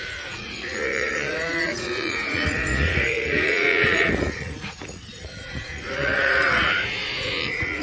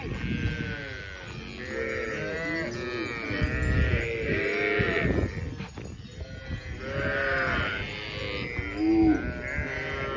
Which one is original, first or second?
second